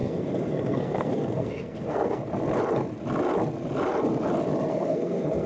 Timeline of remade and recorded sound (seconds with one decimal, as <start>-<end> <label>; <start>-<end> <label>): 0.0-2.2 remade; 2.2-4.7 recorded; 4.7-5.5 remade